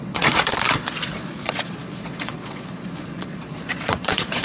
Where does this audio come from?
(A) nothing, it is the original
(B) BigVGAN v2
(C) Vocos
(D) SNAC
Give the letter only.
C